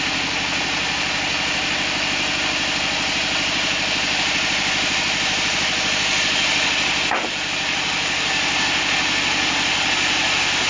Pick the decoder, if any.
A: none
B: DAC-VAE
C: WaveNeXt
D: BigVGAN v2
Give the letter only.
A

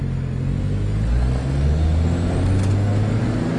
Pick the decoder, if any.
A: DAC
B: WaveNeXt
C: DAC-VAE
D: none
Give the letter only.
D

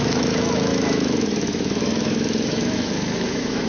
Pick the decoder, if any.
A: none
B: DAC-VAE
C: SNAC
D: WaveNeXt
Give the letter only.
B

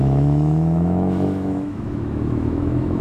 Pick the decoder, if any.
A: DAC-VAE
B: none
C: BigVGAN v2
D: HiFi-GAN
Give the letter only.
A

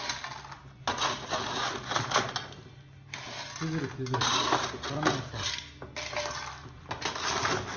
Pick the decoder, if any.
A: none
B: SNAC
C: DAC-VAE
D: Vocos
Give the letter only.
A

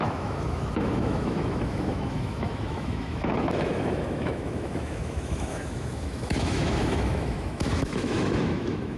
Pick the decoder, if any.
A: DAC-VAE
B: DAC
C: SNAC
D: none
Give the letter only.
A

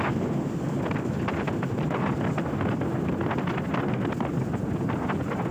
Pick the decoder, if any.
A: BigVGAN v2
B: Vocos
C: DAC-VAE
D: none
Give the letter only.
D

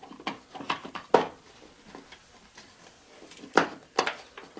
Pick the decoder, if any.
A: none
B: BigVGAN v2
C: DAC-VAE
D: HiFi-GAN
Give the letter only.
A